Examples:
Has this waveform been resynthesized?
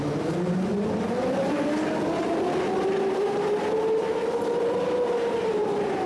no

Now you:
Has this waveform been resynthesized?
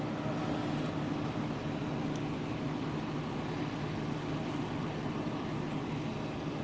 no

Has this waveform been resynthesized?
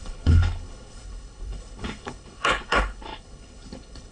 yes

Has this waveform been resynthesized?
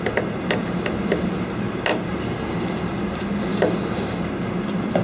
no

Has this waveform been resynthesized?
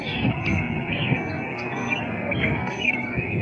yes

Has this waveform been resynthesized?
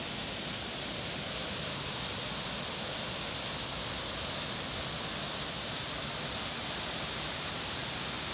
no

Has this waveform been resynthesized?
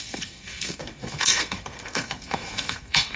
yes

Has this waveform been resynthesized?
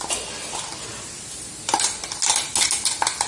no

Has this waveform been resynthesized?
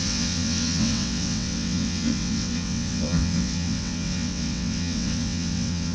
yes